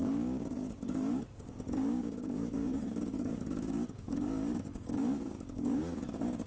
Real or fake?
fake